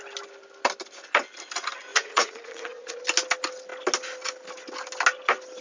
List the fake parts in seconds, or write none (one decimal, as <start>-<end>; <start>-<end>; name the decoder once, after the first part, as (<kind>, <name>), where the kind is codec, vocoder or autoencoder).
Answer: 1.9-3.0 (vocoder, Vocos)

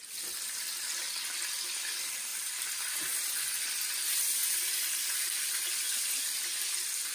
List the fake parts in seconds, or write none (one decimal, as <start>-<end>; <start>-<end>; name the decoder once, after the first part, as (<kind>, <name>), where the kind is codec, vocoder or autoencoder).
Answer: 2.3-3.3 (vocoder, BigVGAN v2); 4.4-5.4